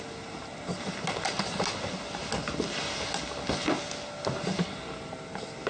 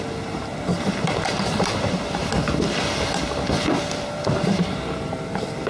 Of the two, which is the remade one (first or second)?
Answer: second